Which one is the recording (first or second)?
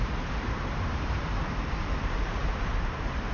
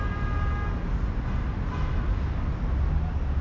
second